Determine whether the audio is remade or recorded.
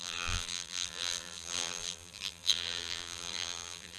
remade